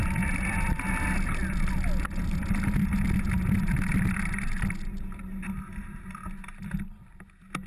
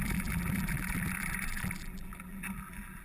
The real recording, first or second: first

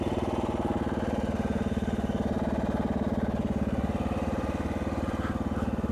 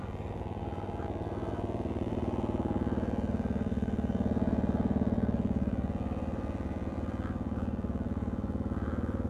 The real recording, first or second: first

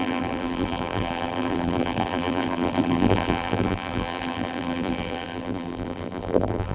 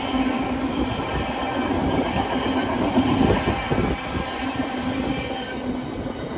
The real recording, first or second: second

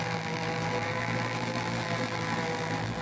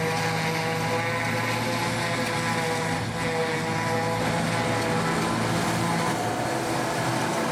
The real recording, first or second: second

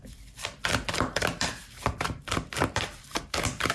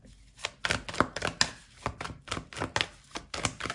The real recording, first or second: second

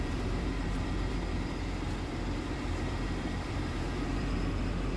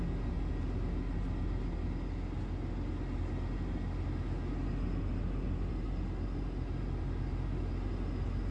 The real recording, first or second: second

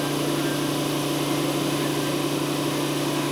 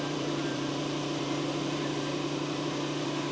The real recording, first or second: first